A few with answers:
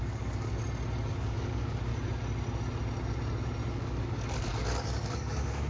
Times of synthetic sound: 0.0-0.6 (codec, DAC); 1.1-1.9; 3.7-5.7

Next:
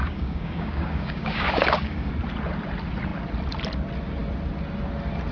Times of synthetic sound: 0.0-2.1 (codec, DAC)

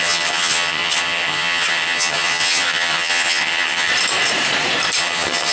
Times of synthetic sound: 0.0-3.9 (vocoder, HiFi-GAN); 5.0-5.5

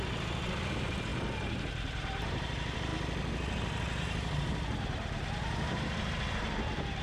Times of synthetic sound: 0.0-2.9 (vocoder, BigVGAN v2); 4.0-7.0

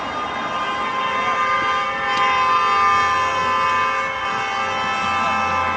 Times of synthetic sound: none

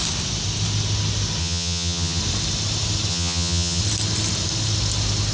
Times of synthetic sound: 1.4-2.2 (vocoder, HiFi-GAN); 3.1-3.8

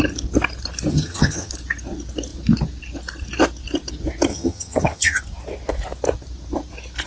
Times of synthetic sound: 0.9-1.5 (vocoder, HiFi-GAN); 4.3-5.2

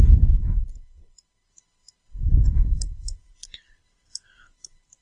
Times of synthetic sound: 0.6-1.5 (vocoder, BigVGAN v2); 2.3-5.0